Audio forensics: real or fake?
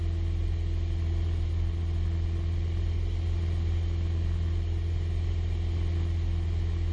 real